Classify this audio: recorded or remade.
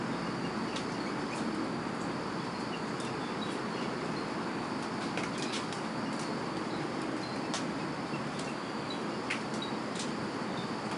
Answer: recorded